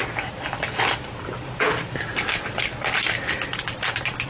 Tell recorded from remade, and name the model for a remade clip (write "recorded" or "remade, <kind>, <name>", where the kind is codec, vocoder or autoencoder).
recorded